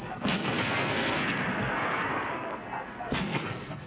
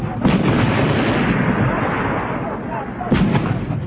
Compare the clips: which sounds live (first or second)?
second